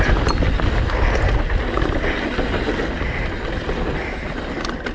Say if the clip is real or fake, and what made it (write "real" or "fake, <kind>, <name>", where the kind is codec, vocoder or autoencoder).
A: real